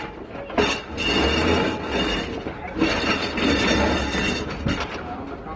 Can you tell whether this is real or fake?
real